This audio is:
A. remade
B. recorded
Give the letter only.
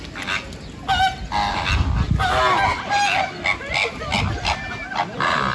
B